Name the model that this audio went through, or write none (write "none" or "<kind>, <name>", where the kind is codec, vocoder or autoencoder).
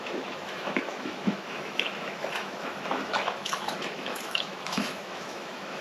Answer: autoencoder, DAC-VAE